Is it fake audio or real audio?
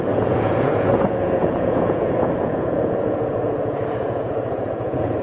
fake